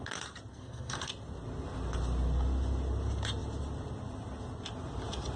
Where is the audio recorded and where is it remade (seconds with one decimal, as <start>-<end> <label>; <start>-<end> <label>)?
0.0-0.5 recorded; 0.5-1.1 remade; 1.1-5.4 recorded